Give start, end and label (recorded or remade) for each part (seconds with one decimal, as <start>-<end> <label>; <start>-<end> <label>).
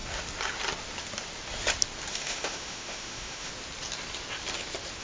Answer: 0.0-2.1 recorded; 2.1-3.5 remade; 3.5-5.0 recorded